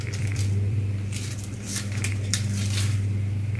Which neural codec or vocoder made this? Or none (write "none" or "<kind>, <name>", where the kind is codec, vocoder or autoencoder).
vocoder, BigVGAN v2